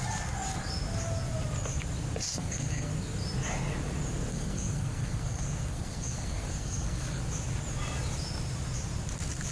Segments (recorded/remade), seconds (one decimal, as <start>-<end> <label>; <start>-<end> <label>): 0.0-2.3 recorded; 2.3-2.9 remade; 2.9-4.3 recorded; 4.3-7.2 remade; 7.2-9.5 recorded